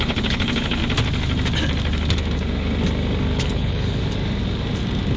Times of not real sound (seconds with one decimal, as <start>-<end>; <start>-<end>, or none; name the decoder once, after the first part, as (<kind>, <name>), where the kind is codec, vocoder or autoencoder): 0.0-0.8 (codec, HILCodec); 3.4-4.0